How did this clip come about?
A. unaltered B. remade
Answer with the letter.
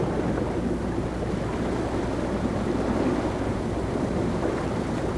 A